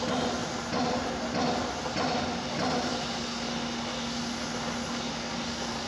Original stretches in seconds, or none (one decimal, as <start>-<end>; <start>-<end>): 0.0-5.9